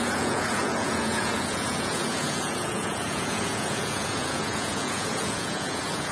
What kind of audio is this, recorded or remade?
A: remade